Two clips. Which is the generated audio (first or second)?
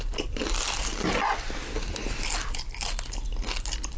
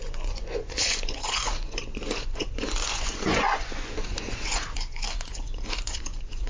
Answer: second